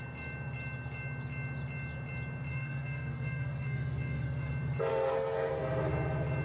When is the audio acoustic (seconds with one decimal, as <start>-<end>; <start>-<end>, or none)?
0.0-2.5; 4.5-4.9; 5.8-6.4